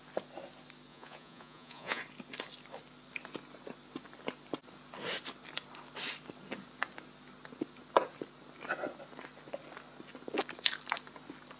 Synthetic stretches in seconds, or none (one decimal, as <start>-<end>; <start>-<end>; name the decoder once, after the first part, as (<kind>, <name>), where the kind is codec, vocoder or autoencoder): 0.9-2.0 (vocoder, Vocos)